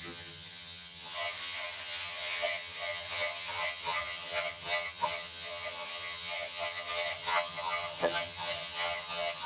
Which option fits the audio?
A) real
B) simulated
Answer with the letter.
B